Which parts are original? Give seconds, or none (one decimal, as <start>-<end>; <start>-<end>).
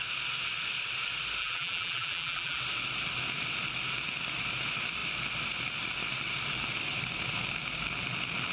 0.0-1.4; 2.6-8.5